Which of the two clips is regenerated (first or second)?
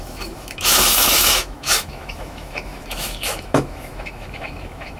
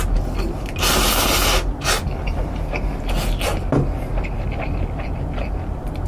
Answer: first